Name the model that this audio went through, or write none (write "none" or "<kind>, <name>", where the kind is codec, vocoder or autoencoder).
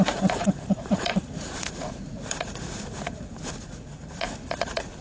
vocoder, Vocos